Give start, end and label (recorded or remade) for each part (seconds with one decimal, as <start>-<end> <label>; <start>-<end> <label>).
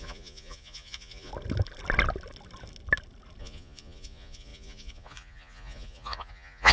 0.0-1.3 remade; 1.3-3.4 recorded; 3.4-6.7 remade